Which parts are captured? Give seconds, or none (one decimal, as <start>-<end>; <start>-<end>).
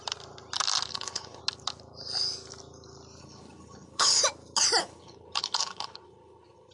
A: 0.0-0.9; 1.4-3.2; 4.2-4.8